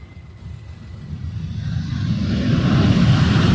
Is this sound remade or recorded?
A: recorded